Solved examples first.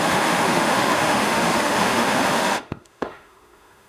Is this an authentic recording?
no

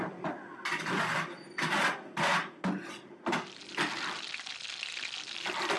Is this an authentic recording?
yes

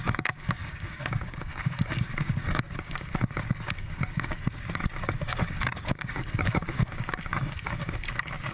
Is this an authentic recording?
no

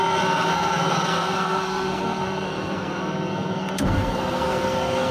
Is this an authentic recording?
no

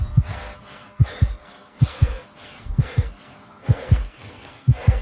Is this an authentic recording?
no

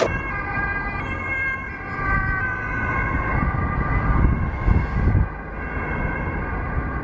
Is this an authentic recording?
yes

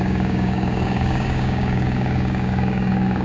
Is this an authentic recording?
no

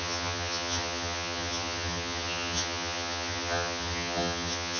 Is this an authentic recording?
no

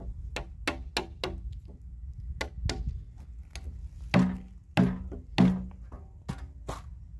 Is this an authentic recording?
yes